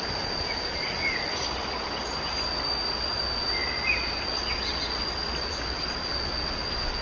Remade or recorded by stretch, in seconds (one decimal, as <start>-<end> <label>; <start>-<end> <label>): 0.0-7.0 recorded